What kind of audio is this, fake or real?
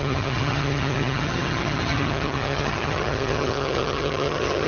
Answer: fake